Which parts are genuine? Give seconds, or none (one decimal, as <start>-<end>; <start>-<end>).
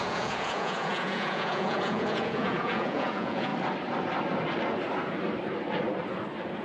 3.5-6.6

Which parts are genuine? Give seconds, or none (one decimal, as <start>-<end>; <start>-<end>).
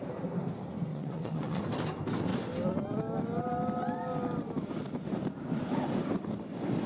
0.0-0.9; 1.6-6.9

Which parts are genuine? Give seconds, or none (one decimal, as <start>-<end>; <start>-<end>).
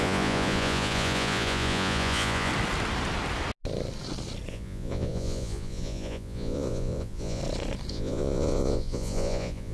2.5-4.5; 7.4-7.9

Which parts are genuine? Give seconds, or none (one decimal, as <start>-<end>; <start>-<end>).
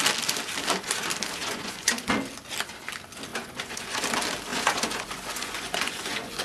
0.0-1.4; 2.1-3.3; 4.0-4.5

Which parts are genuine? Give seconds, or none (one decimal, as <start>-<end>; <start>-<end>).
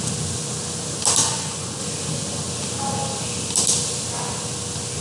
0.0-1.2; 1.8-5.0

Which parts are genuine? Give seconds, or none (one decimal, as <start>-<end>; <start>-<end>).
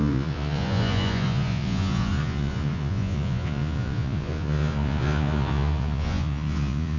none